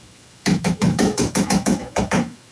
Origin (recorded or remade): remade